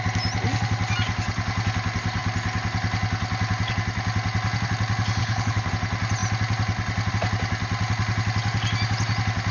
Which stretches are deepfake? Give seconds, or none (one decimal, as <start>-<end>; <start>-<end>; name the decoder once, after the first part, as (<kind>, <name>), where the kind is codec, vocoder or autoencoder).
5.2-5.7 (codec, HILCodec)